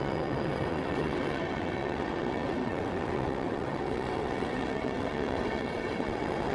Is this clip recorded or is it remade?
remade